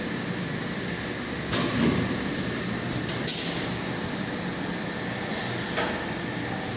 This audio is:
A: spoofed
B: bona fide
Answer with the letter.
B